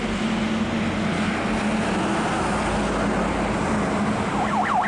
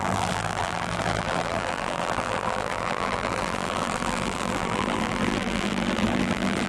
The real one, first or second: first